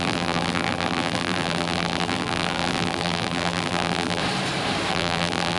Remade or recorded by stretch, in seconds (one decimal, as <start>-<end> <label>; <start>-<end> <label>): 0.0-4.2 remade; 4.2-4.9 recorded; 4.9-5.6 remade